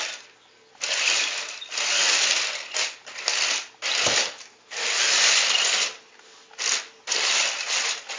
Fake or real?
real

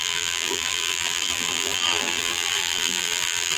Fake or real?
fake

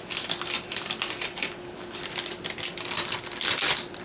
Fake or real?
real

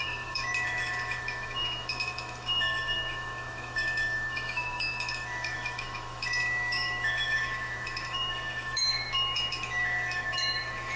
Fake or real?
fake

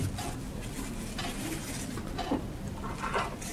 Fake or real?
real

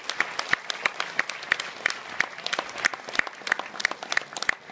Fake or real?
real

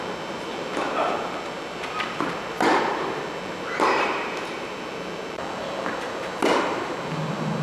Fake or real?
fake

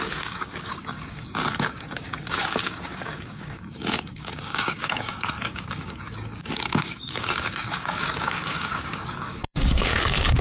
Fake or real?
fake